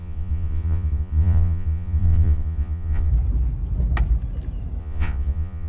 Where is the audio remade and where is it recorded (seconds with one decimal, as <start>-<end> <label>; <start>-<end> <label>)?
0.0-3.1 remade; 3.1-4.8 recorded; 4.8-5.7 remade